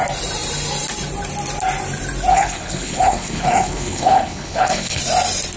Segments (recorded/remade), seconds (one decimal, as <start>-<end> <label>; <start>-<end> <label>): 0.0-2.3 recorded; 2.3-5.0 remade; 5.0-5.6 recorded